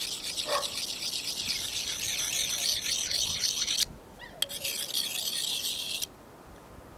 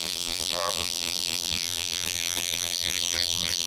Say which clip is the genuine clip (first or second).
first